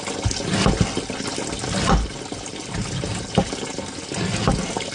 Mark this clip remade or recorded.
recorded